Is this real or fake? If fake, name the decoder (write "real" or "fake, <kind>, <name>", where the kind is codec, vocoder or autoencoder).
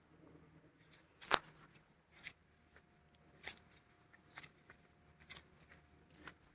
real